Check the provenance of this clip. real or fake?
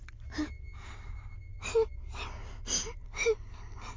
real